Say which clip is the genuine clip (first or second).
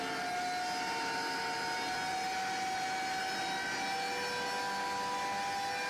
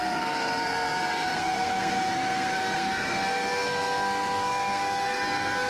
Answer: first